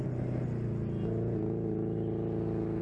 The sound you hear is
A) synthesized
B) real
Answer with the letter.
B